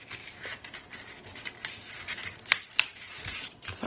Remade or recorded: recorded